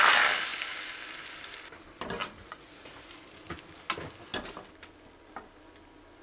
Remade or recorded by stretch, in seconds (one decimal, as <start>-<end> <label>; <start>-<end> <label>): 0.0-2.4 recorded; 2.4-3.1 remade; 3.1-6.2 recorded